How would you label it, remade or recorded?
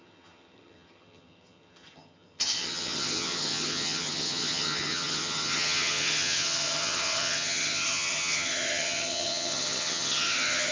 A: remade